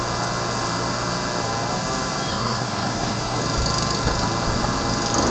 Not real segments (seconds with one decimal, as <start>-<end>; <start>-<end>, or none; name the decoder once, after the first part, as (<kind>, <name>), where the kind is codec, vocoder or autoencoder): 2.3-3.4 (codec, SNAC)